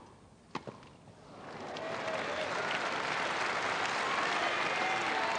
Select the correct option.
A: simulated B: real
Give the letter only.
B